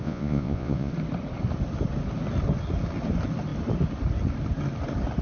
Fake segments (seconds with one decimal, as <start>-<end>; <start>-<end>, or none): 0.0-0.9

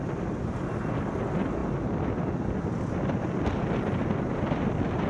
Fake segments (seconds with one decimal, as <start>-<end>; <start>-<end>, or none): none